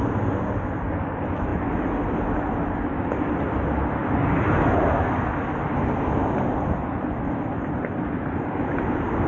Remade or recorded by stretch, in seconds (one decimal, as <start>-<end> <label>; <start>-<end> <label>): 0.0-9.3 recorded